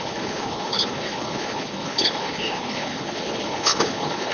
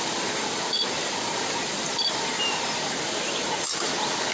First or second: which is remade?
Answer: first